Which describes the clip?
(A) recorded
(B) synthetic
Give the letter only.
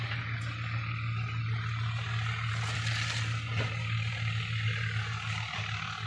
A